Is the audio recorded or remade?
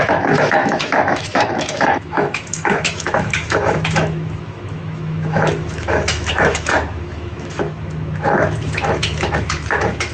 remade